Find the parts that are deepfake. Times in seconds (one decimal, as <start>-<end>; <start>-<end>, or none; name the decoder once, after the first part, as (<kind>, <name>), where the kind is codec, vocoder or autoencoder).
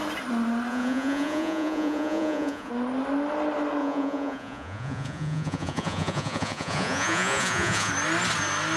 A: 0.7-2.7 (vocoder, Vocos); 3.8-7.9